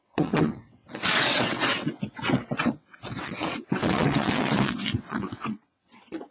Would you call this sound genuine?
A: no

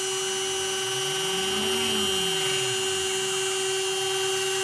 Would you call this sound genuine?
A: yes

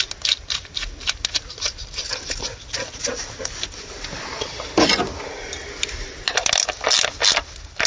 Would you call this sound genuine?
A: yes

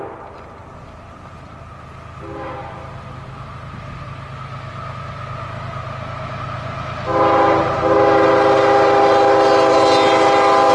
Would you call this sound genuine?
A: yes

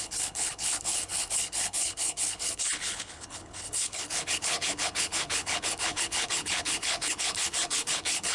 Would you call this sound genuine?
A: no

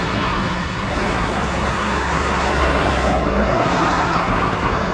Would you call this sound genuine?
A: no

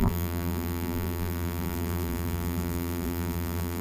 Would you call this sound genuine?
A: no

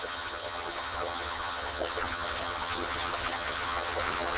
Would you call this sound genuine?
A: no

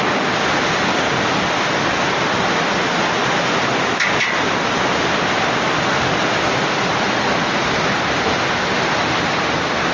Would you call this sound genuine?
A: yes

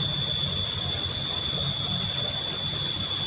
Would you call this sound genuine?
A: yes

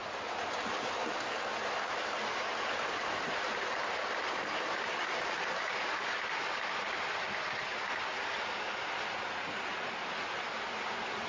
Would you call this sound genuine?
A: yes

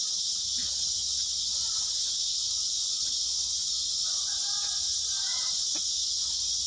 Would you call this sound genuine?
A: no